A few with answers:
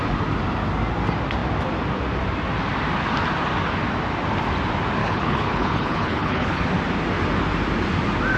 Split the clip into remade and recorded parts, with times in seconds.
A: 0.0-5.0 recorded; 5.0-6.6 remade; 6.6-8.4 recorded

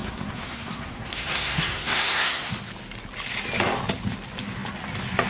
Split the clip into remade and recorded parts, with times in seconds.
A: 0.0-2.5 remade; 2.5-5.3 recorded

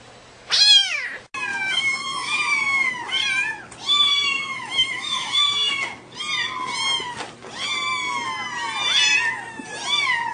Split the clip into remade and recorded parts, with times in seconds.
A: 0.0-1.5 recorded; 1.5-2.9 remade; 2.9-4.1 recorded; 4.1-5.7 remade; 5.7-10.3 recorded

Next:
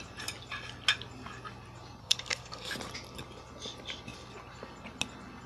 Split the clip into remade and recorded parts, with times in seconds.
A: 0.0-2.0 recorded; 2.0-2.7 remade; 2.7-5.5 recorded